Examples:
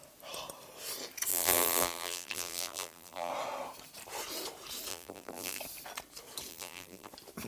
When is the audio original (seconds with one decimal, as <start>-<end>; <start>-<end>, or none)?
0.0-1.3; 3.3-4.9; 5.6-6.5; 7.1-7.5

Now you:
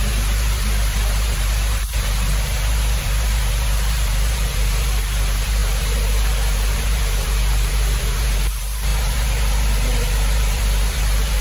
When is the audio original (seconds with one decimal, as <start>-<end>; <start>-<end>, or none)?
none

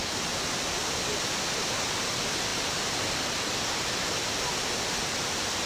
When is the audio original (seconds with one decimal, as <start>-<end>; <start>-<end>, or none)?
0.0-0.8; 1.7-5.7

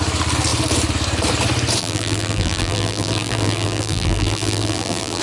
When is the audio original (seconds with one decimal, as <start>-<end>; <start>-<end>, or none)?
0.0-1.8

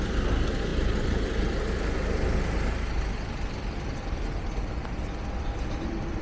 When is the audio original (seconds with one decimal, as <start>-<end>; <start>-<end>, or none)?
0.0-6.2